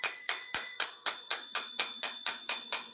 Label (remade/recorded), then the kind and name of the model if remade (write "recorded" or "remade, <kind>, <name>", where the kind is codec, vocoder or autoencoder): remade, vocoder, Vocos